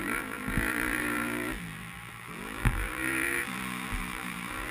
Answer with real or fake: fake